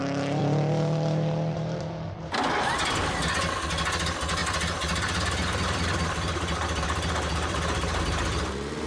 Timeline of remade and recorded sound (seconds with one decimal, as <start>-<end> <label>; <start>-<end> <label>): 0.0-0.4 recorded; 0.4-1.8 remade; 1.8-4.4 recorded; 4.4-8.0 remade; 8.0-8.9 recorded